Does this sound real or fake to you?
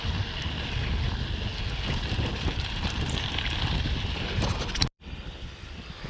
real